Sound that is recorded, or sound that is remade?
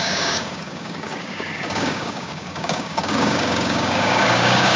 remade